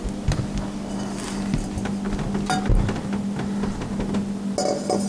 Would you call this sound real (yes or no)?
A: yes